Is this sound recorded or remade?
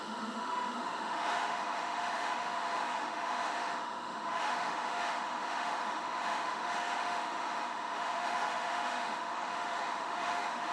remade